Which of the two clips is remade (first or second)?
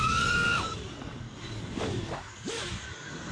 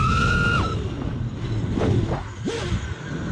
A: first